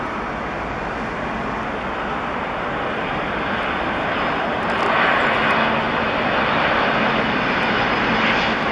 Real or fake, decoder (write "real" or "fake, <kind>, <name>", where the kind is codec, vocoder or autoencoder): real